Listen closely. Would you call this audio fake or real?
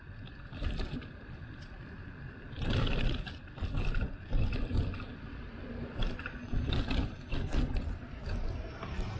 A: real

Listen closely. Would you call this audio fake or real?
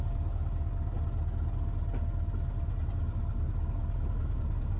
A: real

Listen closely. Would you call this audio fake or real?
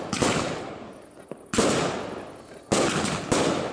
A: real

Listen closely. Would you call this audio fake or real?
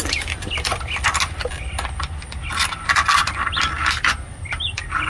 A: real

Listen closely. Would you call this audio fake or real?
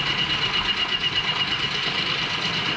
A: real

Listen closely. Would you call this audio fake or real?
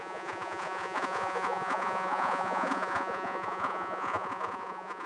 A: fake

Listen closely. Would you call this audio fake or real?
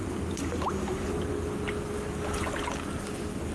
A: real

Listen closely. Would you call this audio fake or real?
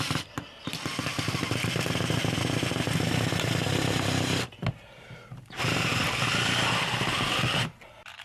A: real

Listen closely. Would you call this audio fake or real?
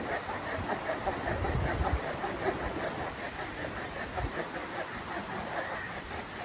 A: fake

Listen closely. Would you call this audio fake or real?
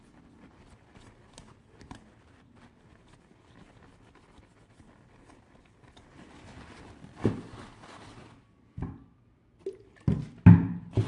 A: real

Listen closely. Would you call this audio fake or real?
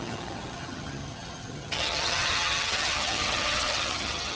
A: fake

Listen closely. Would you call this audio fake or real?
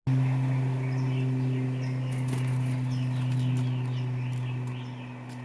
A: real